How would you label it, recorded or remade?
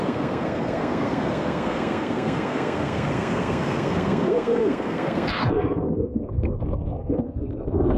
remade